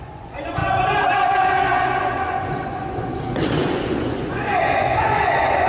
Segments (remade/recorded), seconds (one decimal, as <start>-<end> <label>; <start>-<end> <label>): 0.0-5.7 remade